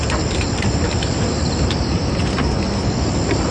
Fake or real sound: real